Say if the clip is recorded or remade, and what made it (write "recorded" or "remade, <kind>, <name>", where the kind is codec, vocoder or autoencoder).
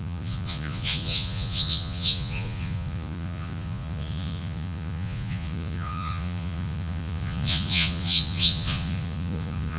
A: remade, vocoder, Vocos